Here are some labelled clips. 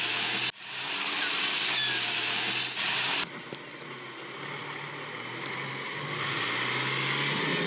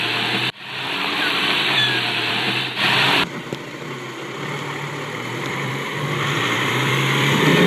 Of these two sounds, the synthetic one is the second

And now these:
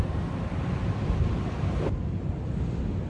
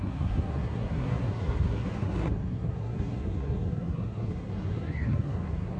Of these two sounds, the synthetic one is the second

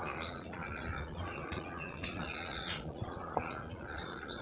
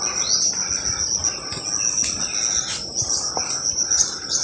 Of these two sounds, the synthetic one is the first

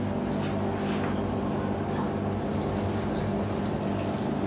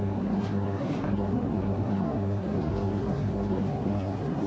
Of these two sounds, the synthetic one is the second